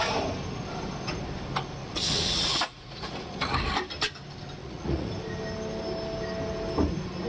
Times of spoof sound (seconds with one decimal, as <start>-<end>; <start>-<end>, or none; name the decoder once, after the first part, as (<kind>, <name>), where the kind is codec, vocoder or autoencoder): 1.8-3.5 (vocoder, Vocos); 4.6-5.1